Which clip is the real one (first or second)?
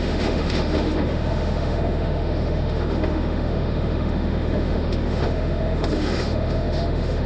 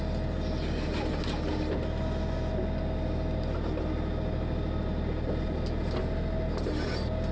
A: second